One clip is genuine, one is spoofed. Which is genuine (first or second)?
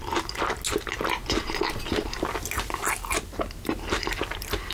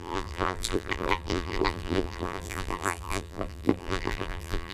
first